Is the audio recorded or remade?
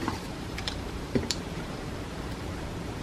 remade